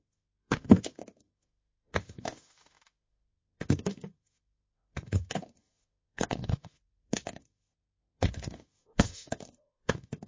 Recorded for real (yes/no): no